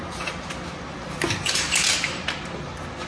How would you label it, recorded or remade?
recorded